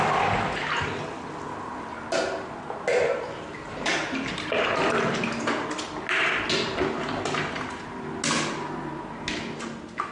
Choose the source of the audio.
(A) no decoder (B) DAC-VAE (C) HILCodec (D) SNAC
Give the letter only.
A